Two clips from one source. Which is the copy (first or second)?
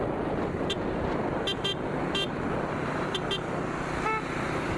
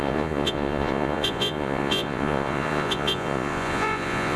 second